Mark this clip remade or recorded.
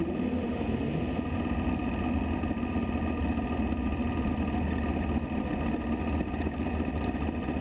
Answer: recorded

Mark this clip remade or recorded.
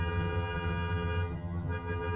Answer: remade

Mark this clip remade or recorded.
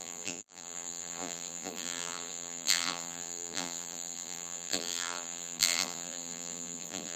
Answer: remade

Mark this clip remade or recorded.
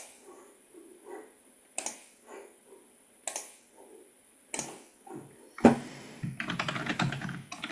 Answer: recorded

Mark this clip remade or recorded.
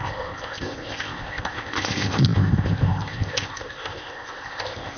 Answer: remade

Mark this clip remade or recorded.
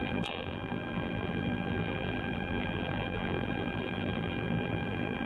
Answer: remade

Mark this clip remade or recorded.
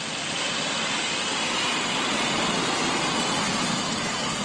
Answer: recorded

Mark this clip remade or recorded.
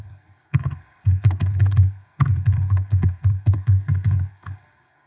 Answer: remade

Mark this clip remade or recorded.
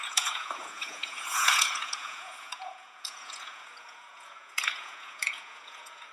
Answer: remade